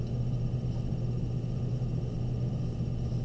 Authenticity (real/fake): real